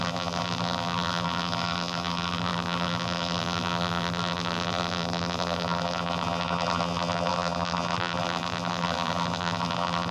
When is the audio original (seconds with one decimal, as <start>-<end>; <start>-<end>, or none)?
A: none